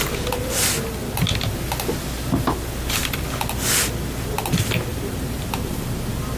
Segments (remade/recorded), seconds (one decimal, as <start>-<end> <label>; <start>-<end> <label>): 0.0-4.9 recorded; 4.9-5.8 remade; 5.8-6.4 recorded